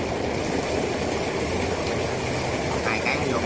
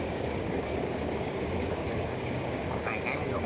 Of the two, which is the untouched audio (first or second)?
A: first